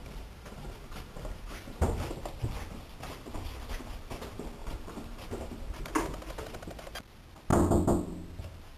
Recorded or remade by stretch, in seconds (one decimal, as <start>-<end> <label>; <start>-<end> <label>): 0.0-1.8 remade; 1.8-4.6 recorded; 4.6-5.9 remade; 5.9-8.8 recorded